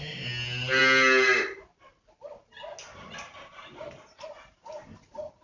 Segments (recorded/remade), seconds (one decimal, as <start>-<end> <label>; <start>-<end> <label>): 0.0-5.4 recorded